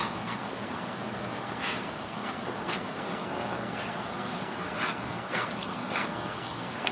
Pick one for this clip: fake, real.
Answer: fake